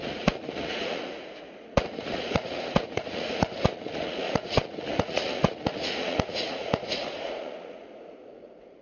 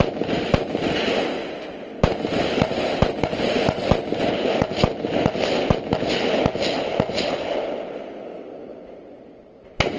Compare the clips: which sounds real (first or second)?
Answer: second